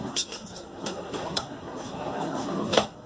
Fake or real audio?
fake